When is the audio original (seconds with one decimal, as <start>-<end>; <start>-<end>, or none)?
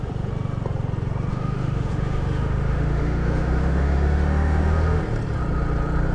0.0-1.3; 5.0-6.1